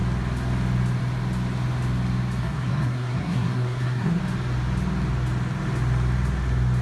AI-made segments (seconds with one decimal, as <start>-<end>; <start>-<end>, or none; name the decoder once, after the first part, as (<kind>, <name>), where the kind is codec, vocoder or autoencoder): 2.4-4.2 (codec, SNAC)